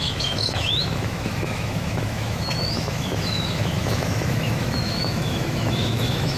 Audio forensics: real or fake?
fake